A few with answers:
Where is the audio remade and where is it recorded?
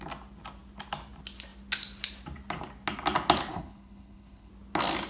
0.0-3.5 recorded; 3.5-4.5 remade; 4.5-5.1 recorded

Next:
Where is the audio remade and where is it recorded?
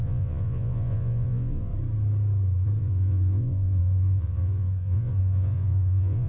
0.0-1.7 remade; 1.7-2.8 recorded; 2.8-6.3 remade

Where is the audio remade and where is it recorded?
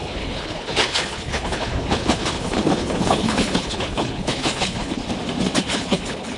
0.0-5.0 remade; 5.0-5.6 recorded; 5.6-6.4 remade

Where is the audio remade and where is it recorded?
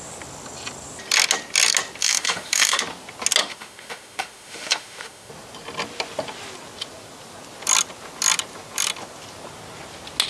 0.0-2.0 recorded; 2.0-2.8 remade; 2.8-3.4 recorded; 3.4-5.3 remade; 5.3-10.3 recorded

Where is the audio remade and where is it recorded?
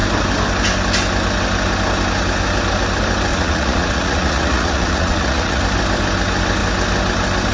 0.0-3.3 recorded; 3.3-5.6 remade; 5.6-7.5 recorded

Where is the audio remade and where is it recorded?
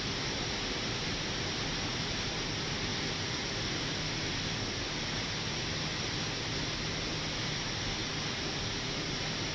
0.0-9.5 recorded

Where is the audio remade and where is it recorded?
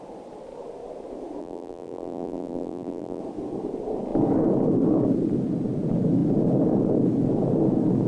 0.0-1.4 recorded; 1.4-3.2 remade; 3.2-8.1 recorded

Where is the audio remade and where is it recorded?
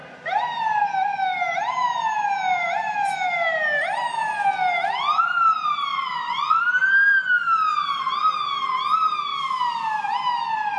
0.0-5.9 recorded; 5.9-6.6 remade; 6.6-10.8 recorded